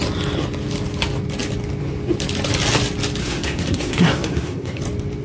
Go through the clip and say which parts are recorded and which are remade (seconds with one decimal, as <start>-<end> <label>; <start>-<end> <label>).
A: 0.0-3.2 recorded; 3.2-4.8 remade; 4.8-5.2 recorded